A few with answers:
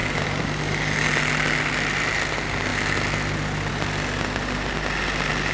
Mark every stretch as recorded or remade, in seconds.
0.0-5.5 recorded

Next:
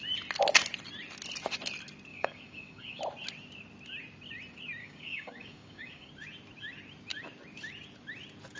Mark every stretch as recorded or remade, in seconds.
0.0-2.1 recorded; 2.1-3.0 remade; 3.0-4.8 recorded; 4.8-6.1 remade; 6.1-8.6 recorded

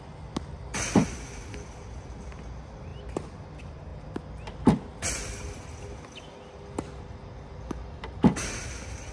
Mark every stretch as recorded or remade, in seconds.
0.0-9.1 recorded

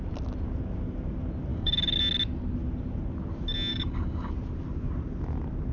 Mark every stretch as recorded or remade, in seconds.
0.0-1.5 recorded; 1.5-2.0 remade; 2.0-3.7 recorded; 3.7-4.3 remade; 4.3-5.7 recorded

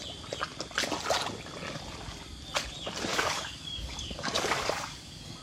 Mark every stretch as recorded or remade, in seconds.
0.0-3.1 recorded; 3.1-5.4 remade

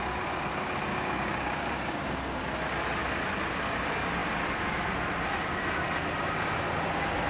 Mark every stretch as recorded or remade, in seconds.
0.0-0.9 recorded; 0.9-2.4 remade; 2.4-7.3 recorded

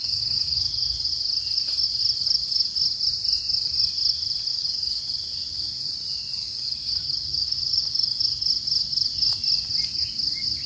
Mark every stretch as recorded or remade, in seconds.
0.0-1.1 remade; 1.1-4.5 recorded; 4.5-5.0 remade; 5.0-6.4 recorded; 6.4-8.2 remade; 8.2-10.7 recorded